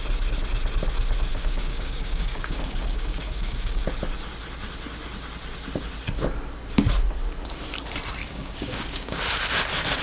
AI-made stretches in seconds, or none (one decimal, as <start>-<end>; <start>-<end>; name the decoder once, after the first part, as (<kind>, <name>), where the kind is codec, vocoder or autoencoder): 1.3-3.8 (codec, DAC); 8.2-9.2